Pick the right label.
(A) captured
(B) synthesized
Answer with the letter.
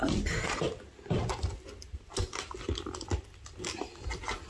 A